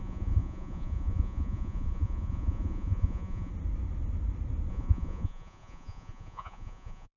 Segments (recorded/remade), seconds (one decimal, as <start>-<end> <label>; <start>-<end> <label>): 0.0-3.5 remade; 3.5-4.7 recorded; 4.7-7.2 remade